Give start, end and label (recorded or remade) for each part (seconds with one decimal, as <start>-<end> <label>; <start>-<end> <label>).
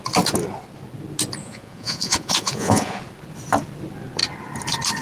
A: 0.0-1.4 recorded; 1.4-3.0 remade; 3.0-5.0 recorded